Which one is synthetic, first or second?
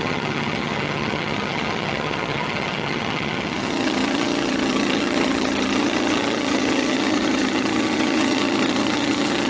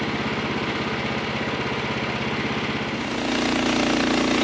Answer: first